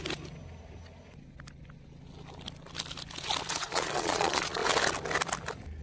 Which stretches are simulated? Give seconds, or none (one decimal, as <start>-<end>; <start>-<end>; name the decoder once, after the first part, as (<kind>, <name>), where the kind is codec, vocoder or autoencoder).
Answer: 3.5-4.6 (vocoder, Vocos)